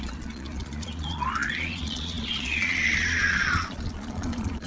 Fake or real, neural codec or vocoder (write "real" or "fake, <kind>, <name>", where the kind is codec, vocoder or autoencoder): fake, vocoder, Vocos